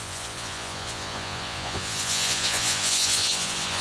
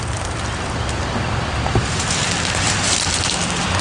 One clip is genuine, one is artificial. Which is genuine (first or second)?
second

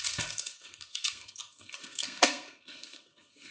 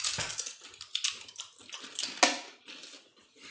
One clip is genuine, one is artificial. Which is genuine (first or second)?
second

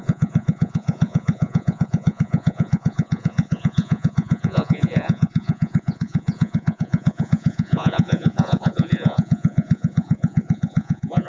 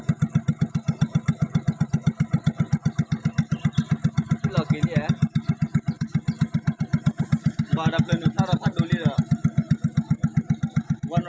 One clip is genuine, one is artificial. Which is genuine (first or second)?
second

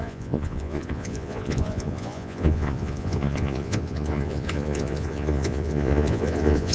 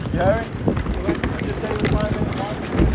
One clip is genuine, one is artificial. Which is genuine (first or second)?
second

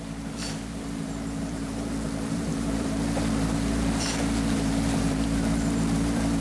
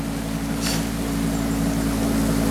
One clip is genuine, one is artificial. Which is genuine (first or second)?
second